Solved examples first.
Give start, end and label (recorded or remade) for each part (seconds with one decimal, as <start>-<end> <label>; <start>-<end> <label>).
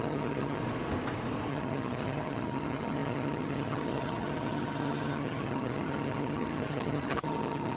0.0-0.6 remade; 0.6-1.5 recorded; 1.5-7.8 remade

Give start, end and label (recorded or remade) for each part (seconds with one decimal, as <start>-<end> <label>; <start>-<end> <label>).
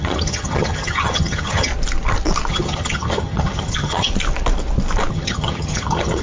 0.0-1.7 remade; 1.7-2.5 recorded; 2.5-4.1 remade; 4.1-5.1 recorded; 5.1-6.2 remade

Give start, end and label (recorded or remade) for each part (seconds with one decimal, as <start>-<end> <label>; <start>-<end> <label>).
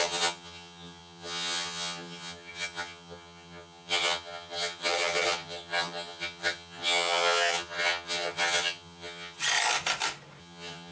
0.0-9.4 remade; 9.4-10.4 recorded; 10.4-10.9 remade